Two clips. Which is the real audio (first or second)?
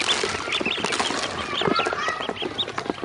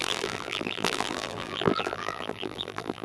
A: first